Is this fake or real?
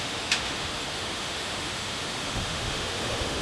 fake